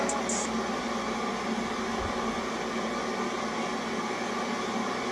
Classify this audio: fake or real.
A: real